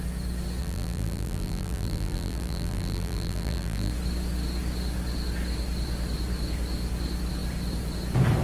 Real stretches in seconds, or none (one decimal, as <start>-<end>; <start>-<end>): 0.0-0.6; 3.9-8.4